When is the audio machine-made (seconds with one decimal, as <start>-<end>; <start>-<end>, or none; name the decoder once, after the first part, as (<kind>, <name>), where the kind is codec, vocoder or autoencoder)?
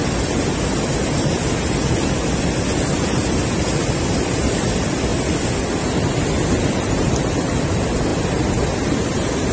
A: none